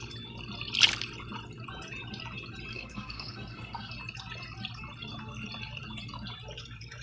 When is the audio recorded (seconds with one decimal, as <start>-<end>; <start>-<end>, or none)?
0.0-2.7; 3.9-7.0